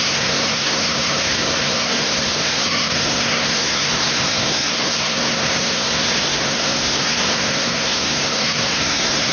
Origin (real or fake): fake